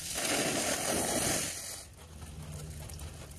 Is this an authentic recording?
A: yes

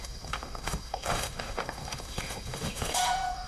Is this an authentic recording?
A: no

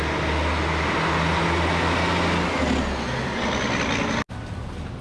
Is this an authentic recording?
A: yes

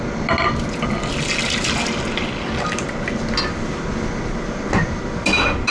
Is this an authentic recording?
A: yes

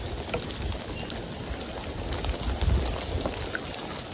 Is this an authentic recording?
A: yes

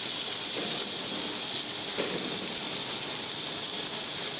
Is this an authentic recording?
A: yes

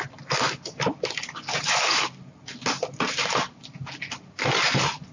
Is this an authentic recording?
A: yes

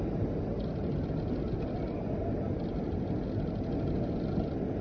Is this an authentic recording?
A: yes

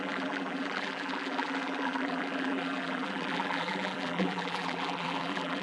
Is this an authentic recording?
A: no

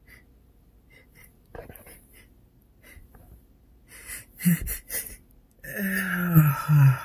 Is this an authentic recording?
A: yes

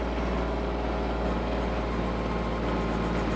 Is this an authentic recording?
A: yes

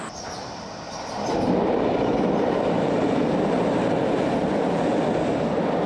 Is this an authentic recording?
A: no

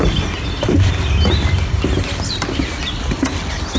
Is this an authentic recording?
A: yes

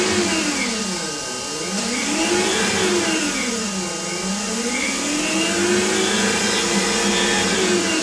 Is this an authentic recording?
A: yes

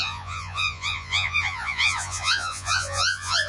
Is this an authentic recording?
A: no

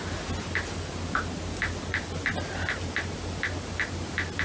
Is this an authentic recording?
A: yes